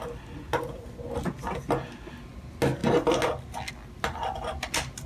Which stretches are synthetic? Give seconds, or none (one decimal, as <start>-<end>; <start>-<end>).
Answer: none